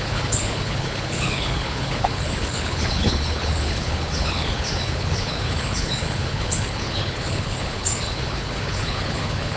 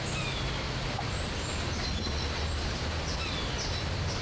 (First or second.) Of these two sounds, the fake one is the first